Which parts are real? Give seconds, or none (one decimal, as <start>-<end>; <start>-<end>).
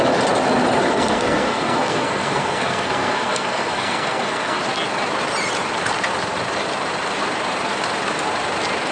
0.0-0.8; 4.6-8.9